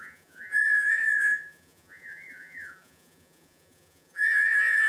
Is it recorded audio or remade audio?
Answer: remade